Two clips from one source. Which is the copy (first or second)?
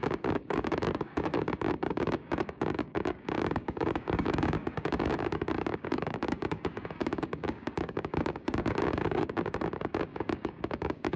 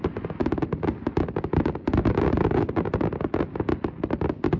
first